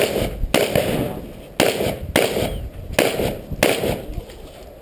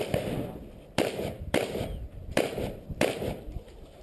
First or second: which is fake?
second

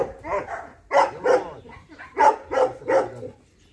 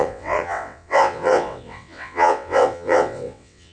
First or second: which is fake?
second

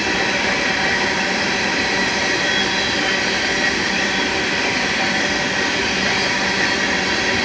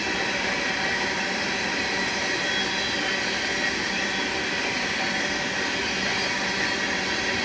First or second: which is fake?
first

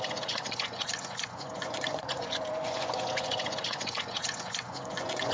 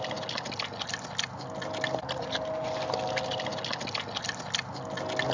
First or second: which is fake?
first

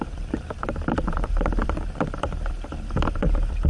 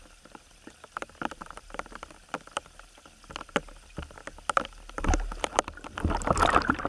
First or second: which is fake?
first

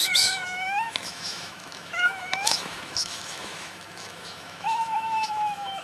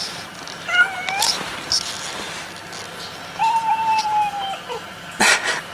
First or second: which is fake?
first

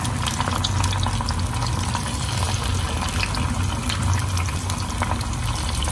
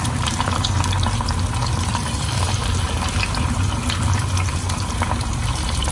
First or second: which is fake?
second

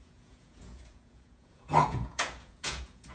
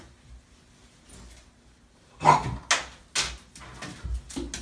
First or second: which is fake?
first